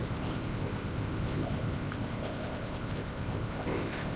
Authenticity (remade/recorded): remade